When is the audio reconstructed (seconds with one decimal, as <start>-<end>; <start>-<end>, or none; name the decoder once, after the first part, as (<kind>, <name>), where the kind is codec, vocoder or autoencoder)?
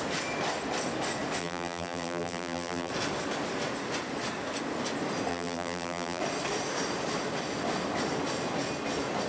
1.4-2.9 (vocoder, BigVGAN v2); 5.3-6.2